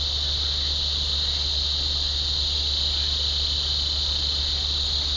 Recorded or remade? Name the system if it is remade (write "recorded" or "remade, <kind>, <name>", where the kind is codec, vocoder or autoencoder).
recorded